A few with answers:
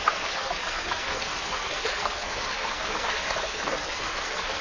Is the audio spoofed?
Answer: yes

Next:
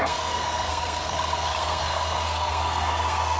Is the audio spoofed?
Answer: yes